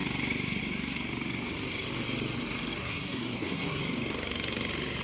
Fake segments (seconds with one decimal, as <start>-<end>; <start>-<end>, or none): 2.8-3.8

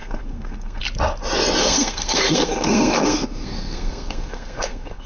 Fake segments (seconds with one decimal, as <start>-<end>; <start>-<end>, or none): 0.0-0.8; 1.6-5.1

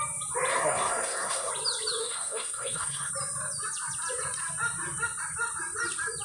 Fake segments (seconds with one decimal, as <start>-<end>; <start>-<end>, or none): 0.5-1.5; 2.0-3.1

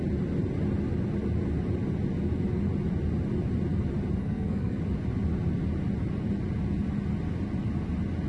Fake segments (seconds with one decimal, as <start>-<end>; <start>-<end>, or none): 4.2-4.8

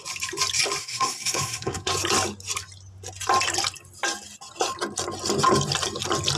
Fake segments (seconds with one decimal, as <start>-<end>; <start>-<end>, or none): 0.8-1.9

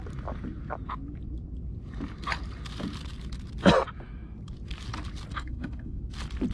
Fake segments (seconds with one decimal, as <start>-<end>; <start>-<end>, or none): 5.3-6.0

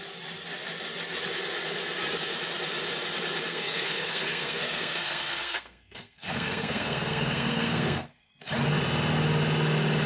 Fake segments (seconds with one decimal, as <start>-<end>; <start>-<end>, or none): 3.5-8.3

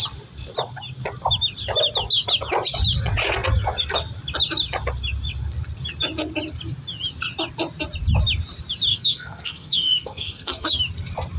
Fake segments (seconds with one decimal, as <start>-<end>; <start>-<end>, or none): 8.9-10.8